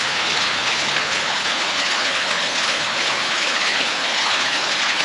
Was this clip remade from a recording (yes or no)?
yes